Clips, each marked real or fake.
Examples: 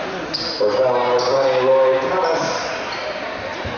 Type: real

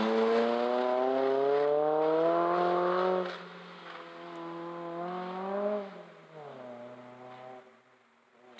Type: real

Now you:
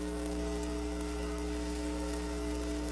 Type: fake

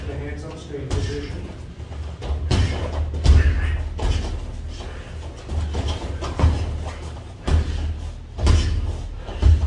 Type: real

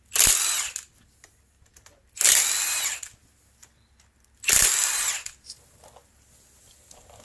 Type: real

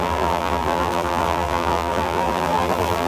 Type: fake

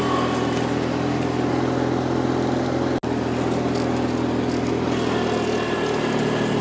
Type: real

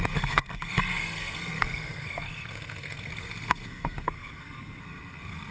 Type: fake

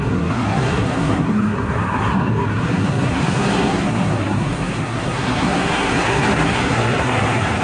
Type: fake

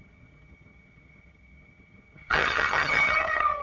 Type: fake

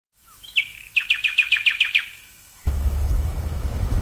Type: fake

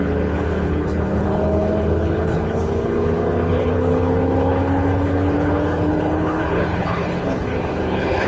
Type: fake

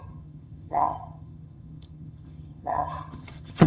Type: fake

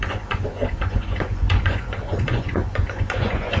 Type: fake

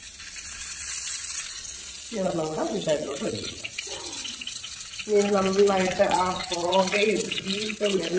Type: fake